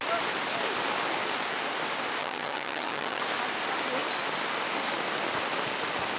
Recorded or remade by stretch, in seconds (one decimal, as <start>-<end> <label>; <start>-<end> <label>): 0.0-2.2 recorded; 2.2-3.2 remade; 3.2-6.2 recorded